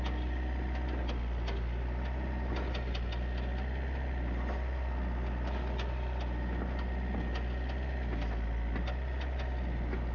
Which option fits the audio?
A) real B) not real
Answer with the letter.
A